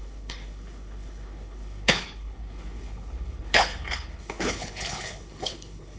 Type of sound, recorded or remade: remade